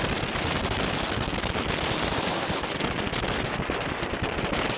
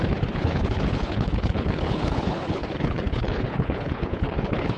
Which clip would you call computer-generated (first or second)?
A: second